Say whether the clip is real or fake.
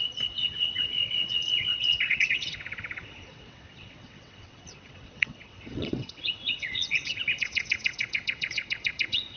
fake